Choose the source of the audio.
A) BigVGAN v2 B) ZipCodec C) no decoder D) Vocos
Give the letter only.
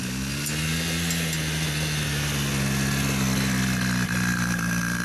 C